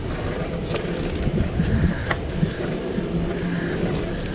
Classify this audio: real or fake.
real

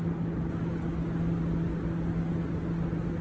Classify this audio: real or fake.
real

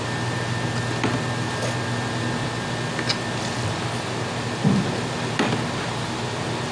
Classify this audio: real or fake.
real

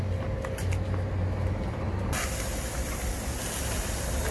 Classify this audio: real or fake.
real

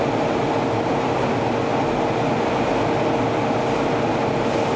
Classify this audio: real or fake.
real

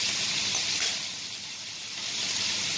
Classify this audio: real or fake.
real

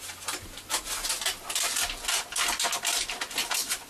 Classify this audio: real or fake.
real